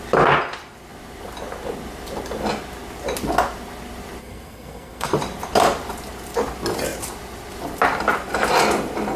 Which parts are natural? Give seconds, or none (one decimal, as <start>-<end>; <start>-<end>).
0.0-4.2; 5.1-9.2